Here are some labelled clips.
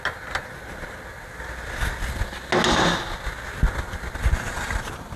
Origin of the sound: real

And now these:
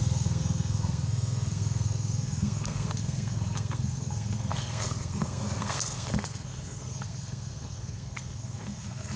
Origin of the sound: fake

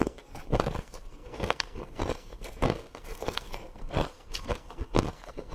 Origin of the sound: fake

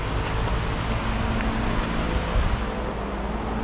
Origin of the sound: real